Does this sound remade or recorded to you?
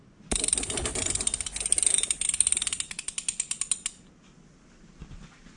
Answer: recorded